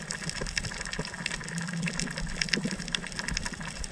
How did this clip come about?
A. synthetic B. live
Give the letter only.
A